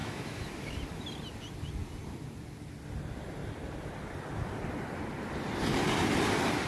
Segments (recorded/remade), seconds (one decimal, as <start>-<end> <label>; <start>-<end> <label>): 0.0-0.8 remade; 0.8-6.7 recorded